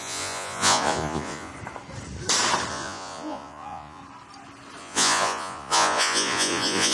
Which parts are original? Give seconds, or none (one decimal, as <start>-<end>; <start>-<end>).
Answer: 1.5-2.7; 4.0-4.8